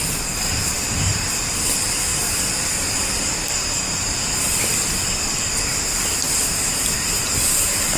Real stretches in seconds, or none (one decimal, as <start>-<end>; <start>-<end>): none